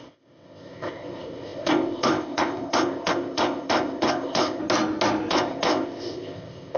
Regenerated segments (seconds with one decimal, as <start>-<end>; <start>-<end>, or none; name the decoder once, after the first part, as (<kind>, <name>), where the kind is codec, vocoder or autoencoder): 0.0-4.6 (codec, ZipCodec); 5.3-6.8

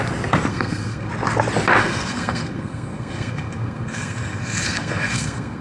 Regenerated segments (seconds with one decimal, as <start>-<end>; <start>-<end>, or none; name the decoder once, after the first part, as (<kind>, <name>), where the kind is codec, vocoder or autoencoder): 0.5-1.1 (codec, SNAC); 1.8-5.6

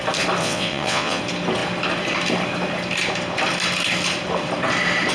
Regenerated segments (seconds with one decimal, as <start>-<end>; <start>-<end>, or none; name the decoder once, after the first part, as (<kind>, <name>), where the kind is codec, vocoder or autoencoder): 0.4-1.2 (vocoder, WaveNeXt)